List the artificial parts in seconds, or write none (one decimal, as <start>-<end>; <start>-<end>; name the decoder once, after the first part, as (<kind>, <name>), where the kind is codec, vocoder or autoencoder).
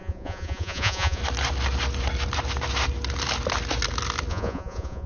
0.0-1.2 (vocoder, Vocos); 4.3-5.1